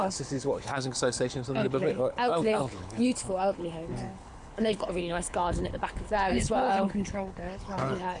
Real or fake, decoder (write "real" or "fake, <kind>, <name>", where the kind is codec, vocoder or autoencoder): fake, codec, HILCodec